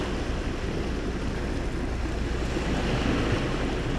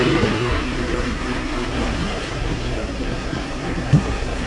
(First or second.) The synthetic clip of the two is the second